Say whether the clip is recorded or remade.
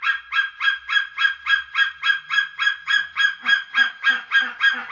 recorded